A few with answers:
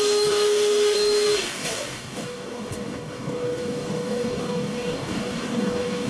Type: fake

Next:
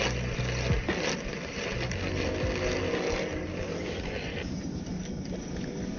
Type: real